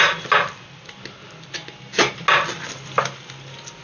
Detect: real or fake real